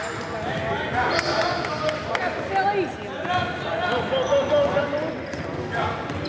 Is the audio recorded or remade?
recorded